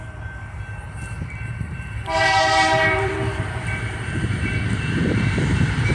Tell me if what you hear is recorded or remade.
remade